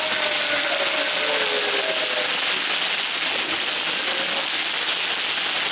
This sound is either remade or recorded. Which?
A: recorded